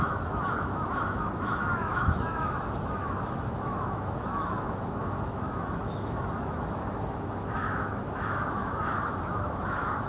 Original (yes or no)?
no